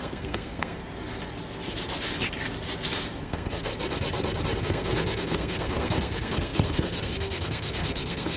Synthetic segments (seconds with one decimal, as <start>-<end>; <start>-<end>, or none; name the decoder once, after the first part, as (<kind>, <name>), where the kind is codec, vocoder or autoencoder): 0.0-0.8 (codec, SNAC); 3.2-3.7; 4.6-8.4